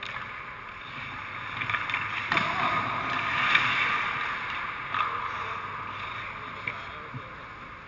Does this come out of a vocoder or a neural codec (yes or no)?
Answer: no